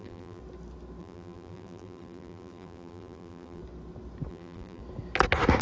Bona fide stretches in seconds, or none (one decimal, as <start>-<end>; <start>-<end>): 0.4-1.0; 3.6-4.3; 4.8-5.6